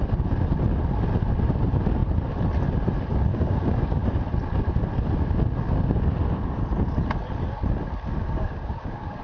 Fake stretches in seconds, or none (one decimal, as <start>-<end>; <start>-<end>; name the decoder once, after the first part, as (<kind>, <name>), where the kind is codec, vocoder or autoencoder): 3.3-4.2 (codec, DAC); 8.2-9.2